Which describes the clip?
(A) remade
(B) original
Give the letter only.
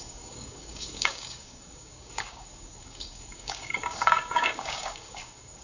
A